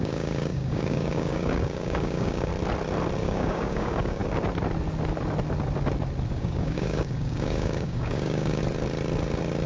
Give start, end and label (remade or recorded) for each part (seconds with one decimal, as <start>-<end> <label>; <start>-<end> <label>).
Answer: 0.0-2.5 remade; 2.5-3.2 recorded; 3.2-4.2 remade; 4.2-6.3 recorded; 6.3-8.6 remade; 8.6-9.7 recorded